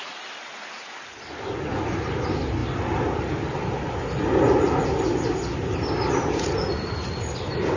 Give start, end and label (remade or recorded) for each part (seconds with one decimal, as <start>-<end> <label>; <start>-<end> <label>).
0.0-7.8 recorded